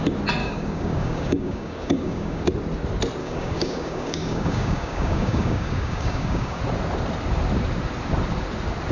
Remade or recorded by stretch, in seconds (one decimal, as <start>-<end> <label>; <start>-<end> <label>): 0.0-0.4 recorded; 0.4-2.5 remade; 2.5-3.2 recorded; 3.2-6.6 remade; 6.6-8.9 recorded